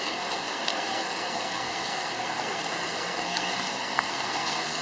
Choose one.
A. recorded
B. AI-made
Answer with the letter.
B